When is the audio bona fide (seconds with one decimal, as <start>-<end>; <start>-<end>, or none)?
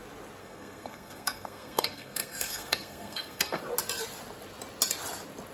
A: 0.0-0.4; 3.6-5.5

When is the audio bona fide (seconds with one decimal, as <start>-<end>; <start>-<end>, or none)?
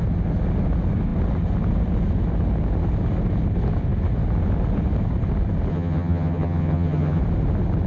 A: 0.0-5.7; 7.2-7.9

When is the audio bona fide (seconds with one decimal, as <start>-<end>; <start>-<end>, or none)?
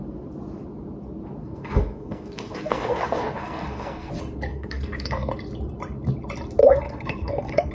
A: 0.0-1.4; 4.1-4.5; 5.3-6.6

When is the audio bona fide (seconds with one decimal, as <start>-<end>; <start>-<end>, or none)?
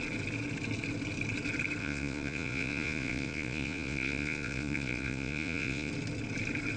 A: 0.0-1.8; 5.9-6.8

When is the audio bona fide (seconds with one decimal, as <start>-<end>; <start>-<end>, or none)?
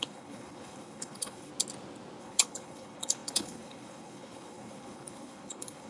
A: 1.5-2.2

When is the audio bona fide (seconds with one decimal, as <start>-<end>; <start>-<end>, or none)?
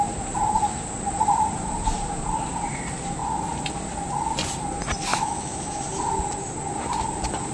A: 0.0-5.1; 5.8-7.5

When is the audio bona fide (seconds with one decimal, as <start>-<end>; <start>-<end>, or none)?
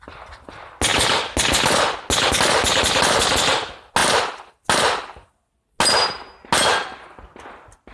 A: 0.0-7.9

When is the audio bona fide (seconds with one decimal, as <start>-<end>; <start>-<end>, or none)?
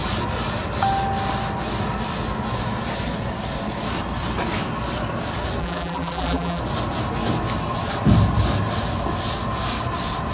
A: 0.0-5.6; 6.6-10.3